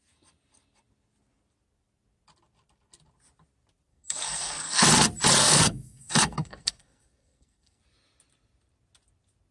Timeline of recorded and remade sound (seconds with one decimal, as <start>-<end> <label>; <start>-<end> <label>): 0.0-3.9 recorded; 3.9-4.9 remade; 4.9-5.4 recorded; 5.4-7.8 remade; 7.8-9.5 recorded